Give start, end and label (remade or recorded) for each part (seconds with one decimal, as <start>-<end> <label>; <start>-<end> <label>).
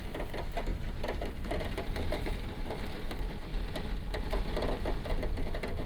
0.0-0.7 recorded; 0.7-2.8 remade; 2.8-5.9 recorded